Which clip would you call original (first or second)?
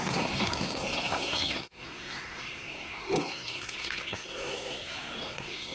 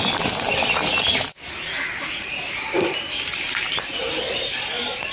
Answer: second